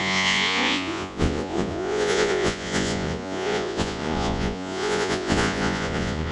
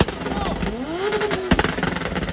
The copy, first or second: first